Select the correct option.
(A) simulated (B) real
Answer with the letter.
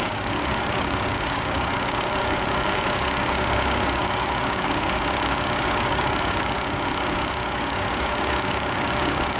A